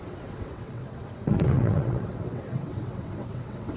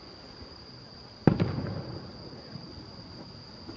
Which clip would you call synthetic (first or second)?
first